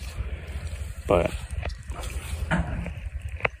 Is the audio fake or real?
fake